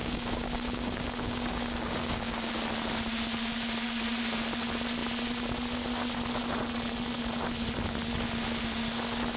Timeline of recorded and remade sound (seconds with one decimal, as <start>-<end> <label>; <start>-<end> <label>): 0.0-2.5 remade; 2.5-9.4 recorded